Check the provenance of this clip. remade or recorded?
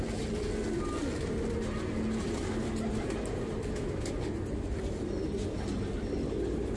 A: recorded